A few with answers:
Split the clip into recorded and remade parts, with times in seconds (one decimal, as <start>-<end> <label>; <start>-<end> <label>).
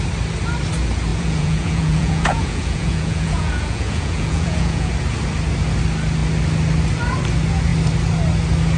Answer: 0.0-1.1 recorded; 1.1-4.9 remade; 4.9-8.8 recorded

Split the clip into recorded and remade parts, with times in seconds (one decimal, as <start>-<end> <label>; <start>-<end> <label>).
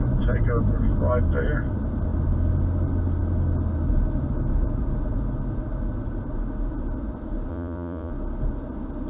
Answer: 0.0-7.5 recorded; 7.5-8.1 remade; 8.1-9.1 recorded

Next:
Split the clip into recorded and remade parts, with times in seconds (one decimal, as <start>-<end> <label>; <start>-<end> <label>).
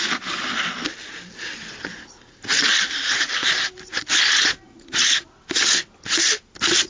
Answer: 0.0-6.9 recorded